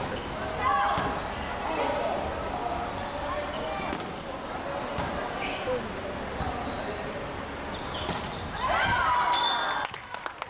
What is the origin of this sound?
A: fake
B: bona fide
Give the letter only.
B